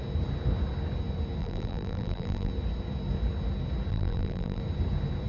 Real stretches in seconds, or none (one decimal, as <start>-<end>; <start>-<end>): 0.0-1.4; 2.5-3.9; 4.6-5.3